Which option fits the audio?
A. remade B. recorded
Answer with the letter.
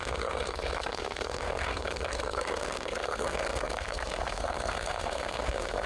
A